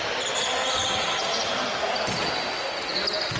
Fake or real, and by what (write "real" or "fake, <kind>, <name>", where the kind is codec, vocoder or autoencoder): real